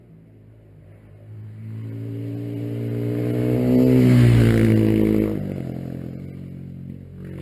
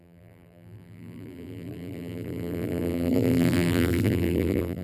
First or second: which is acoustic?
first